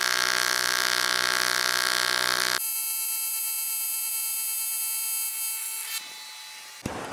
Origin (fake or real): real